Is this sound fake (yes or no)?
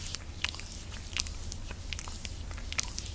no